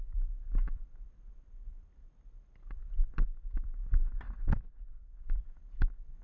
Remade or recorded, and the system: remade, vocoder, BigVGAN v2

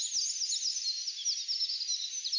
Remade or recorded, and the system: recorded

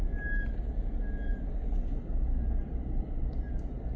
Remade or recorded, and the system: recorded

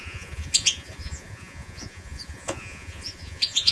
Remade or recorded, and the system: remade, vocoder, Vocos